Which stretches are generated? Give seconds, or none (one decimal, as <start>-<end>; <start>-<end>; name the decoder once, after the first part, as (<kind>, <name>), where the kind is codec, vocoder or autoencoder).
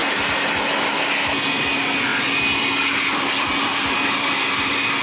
none